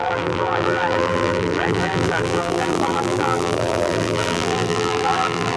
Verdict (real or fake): fake